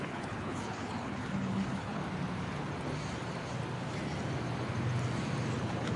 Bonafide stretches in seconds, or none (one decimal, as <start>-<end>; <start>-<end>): 2.0-5.6